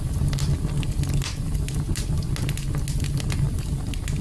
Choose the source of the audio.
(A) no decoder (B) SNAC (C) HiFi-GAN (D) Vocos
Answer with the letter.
A